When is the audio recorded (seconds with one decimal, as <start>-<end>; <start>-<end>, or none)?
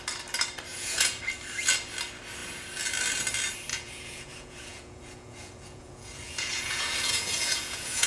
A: 0.0-0.7; 1.2-3.7